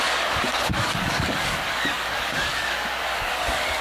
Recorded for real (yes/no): no